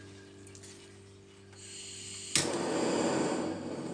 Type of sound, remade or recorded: recorded